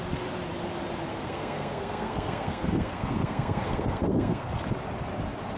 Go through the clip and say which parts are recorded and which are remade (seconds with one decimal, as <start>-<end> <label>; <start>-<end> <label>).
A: 0.0-1.1 recorded; 1.1-4.5 remade; 4.5-5.6 recorded

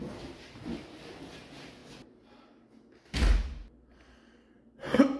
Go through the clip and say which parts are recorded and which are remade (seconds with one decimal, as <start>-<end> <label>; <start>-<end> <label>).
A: 0.0-5.2 recorded

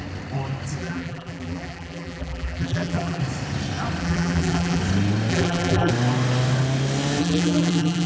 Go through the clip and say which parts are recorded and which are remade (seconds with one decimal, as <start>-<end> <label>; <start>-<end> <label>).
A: 0.0-0.8 recorded; 0.8-3.2 remade; 3.2-4.0 recorded; 4.0-4.8 remade; 4.8-5.3 recorded; 5.3-5.9 remade; 5.9-7.2 recorded; 7.2-8.1 remade

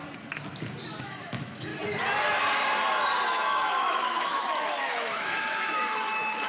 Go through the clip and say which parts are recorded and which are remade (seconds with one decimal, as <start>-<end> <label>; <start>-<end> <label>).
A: 0.0-1.0 recorded; 1.0-1.7 remade; 1.7-3.3 recorded; 3.3-6.5 remade

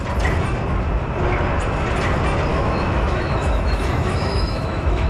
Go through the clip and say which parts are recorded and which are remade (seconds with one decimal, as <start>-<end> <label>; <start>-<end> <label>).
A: 0.0-2.5 recorded; 2.5-5.1 remade

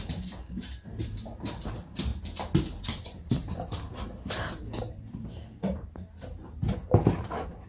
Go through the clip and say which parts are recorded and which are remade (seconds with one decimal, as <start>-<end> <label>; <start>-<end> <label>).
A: 0.0-2.1 remade; 2.1-2.8 recorded; 2.8-3.4 remade; 3.4-4.9 recorded; 4.9-7.7 remade

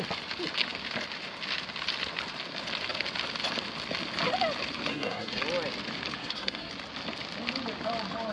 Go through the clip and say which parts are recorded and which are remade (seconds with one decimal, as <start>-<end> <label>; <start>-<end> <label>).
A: 0.0-4.9 recorded; 4.9-5.4 remade; 5.4-6.2 recorded; 6.2-6.7 remade; 6.7-8.3 recorded

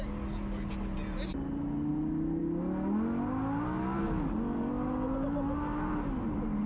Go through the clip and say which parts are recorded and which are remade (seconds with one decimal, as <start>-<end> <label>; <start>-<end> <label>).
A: 0.0-6.7 recorded